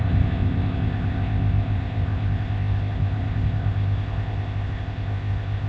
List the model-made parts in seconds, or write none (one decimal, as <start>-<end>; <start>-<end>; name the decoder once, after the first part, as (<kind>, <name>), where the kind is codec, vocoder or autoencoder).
0.0-5.7 (codec, ZipCodec)